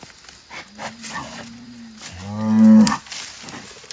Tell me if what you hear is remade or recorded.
recorded